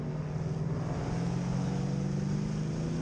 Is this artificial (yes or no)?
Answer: no